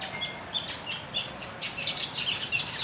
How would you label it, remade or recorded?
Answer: recorded